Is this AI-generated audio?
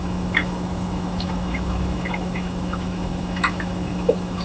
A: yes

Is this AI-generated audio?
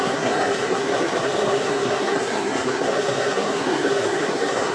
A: yes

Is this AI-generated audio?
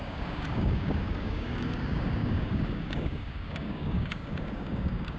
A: yes